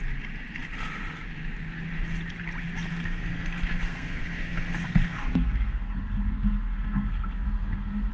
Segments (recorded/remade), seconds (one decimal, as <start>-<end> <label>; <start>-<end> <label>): 0.0-2.9 recorded; 2.9-8.1 remade